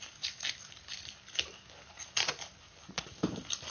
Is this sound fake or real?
real